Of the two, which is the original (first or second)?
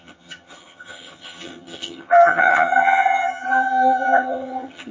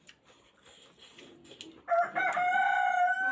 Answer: second